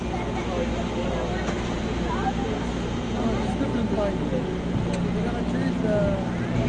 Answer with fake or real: real